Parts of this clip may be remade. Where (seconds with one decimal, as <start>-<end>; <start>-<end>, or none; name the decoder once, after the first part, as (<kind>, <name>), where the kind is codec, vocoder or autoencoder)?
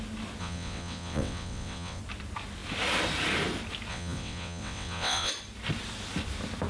0.4-2.0 (vocoder, WaveNeXt); 3.9-5.3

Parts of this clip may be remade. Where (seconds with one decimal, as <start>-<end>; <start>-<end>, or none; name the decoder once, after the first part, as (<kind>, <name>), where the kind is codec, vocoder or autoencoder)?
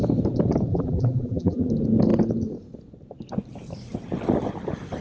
0.7-1.7 (vocoder, BigVGAN v2)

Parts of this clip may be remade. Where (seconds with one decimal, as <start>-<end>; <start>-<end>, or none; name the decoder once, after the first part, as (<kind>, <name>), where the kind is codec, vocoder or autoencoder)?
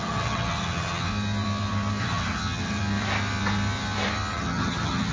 0.0-1.1 (vocoder, HiFi-GAN); 2.0-2.8; 4.3-5.1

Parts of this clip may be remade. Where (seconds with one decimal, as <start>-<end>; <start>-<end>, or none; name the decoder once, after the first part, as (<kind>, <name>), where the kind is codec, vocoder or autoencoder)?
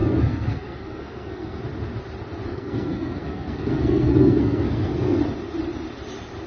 0.0-1.6 (codec, SNAC); 2.5-5.2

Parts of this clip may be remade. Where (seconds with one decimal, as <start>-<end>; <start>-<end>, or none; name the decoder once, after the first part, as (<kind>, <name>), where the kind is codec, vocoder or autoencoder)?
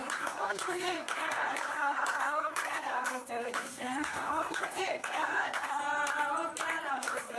0.0-5.8 (codec, SNAC); 6.9-7.4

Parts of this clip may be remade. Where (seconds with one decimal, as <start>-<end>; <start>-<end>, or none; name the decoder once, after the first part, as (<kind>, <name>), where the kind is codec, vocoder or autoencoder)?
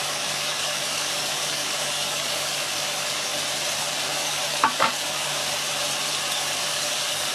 0.0-3.3 (codec, DAC); 3.8-5.4; 6.7-7.3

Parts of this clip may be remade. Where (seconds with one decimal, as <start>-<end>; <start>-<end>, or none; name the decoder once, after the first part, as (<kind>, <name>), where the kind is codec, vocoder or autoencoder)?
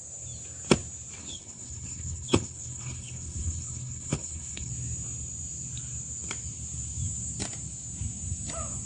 1.2-4.7 (codec, HILCodec)